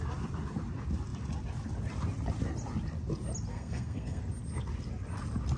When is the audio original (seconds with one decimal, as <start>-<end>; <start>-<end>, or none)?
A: 0.0-3.5; 4.2-5.6